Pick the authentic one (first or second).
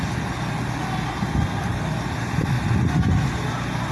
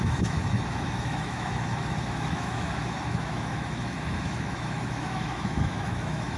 first